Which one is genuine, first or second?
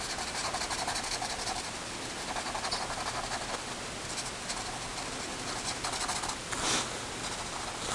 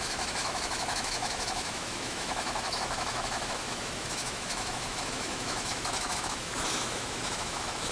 first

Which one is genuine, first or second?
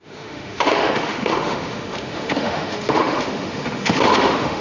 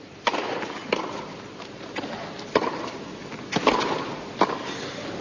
second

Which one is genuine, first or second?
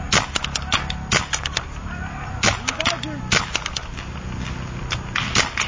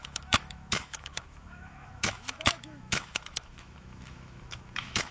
first